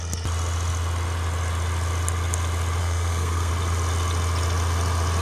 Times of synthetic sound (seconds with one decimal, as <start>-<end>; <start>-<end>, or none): 2.8-3.5